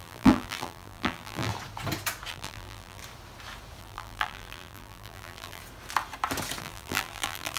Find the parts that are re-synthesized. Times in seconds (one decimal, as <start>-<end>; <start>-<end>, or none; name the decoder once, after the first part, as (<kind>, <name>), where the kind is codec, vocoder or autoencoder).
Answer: 0.0-1.5 (vocoder, BigVGAN v2); 2.3-3.0; 3.8-5.6; 6.6-7.6